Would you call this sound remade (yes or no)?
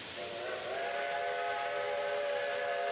no